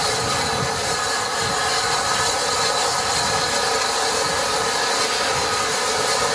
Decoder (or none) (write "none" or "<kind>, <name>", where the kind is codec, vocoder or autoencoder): none